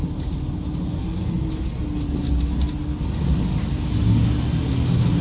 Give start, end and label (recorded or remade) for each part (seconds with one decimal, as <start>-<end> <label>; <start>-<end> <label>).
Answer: 0.0-5.2 recorded